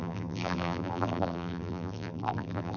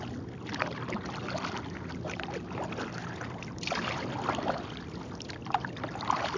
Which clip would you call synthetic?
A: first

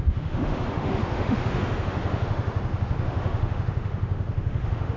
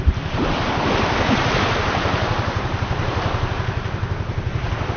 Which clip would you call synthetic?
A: first